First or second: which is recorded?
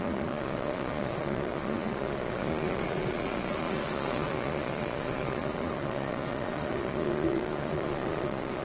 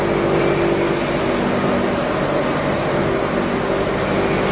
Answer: second